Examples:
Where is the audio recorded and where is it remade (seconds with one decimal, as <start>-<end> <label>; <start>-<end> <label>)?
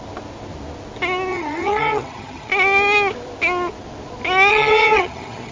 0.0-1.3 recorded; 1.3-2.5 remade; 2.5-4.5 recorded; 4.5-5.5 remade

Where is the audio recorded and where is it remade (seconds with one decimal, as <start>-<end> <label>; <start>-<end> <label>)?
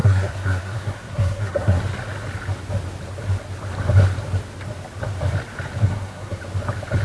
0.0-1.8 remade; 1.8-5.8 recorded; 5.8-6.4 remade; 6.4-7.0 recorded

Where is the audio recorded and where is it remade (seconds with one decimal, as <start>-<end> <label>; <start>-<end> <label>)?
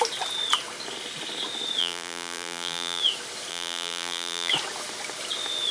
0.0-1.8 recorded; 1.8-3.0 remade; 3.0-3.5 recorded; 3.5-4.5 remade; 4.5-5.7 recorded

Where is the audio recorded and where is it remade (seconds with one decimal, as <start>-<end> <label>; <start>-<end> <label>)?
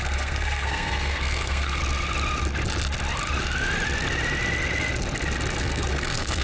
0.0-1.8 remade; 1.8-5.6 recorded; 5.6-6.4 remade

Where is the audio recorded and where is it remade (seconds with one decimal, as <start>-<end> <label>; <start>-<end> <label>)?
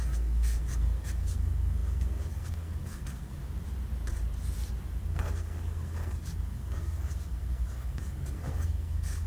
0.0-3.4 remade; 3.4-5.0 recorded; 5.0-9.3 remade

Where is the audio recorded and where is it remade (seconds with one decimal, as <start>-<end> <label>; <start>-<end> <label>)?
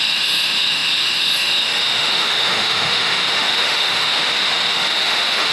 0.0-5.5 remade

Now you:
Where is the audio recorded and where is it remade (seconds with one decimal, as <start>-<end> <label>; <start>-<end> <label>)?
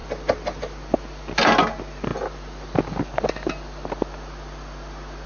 0.0-5.3 recorded